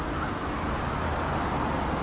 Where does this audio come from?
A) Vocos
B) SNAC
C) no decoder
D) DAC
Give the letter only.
C